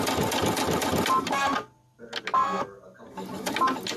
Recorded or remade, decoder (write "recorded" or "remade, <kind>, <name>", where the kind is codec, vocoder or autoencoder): recorded